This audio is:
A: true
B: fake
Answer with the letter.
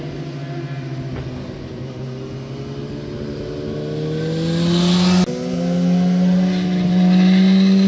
A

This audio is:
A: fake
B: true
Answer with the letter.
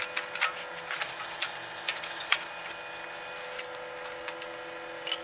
B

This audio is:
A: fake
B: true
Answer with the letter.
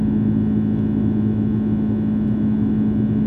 B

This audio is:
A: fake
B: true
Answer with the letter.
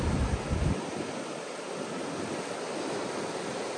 B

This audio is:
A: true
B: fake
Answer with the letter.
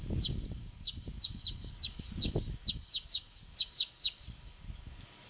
B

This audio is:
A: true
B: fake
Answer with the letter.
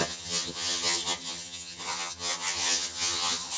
B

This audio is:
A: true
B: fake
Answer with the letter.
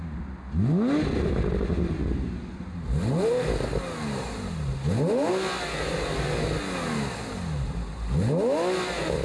A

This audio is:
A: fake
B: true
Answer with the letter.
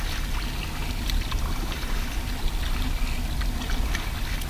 B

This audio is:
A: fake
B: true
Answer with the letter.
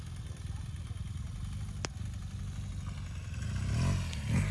B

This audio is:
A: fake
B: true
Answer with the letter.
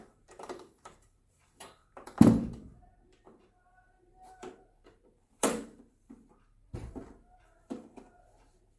A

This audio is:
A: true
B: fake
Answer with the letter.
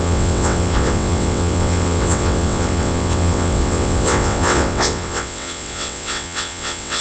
B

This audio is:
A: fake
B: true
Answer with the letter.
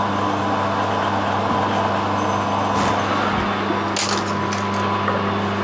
B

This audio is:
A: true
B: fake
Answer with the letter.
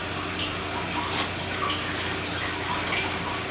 A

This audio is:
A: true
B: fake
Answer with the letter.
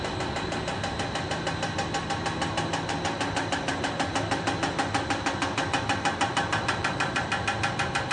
A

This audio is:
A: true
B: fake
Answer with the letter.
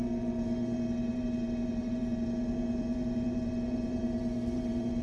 B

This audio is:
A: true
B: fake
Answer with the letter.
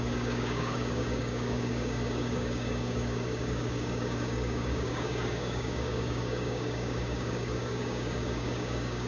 B